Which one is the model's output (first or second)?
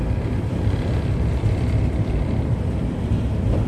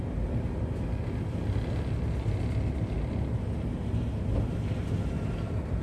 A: first